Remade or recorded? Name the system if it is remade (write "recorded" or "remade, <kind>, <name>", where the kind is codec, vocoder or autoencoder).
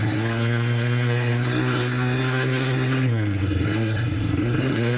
remade, codec, SNAC